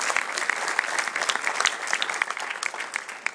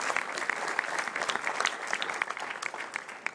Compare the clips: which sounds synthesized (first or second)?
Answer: second